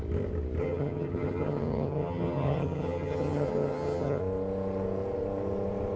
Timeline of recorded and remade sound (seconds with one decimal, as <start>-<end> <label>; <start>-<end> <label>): 0.0-0.6 recorded; 0.6-4.2 remade; 4.2-6.0 recorded